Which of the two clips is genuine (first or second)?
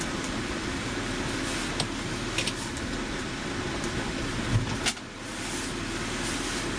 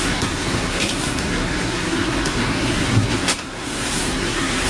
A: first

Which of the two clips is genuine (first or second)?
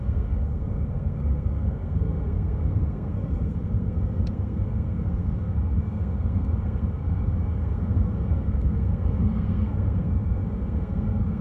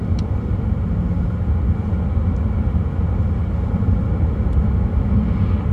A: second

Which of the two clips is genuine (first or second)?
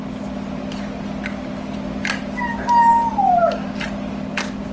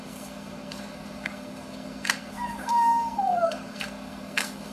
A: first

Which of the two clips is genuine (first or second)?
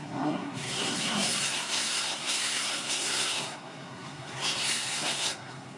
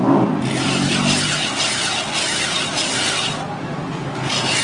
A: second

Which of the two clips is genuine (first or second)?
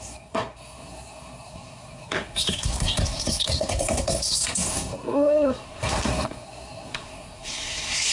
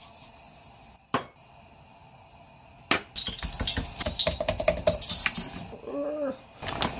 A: second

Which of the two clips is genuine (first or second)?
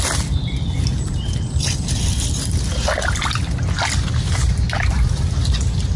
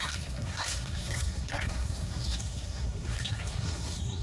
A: first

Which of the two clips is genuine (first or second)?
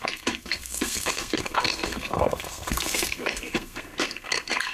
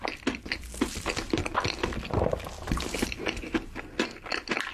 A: second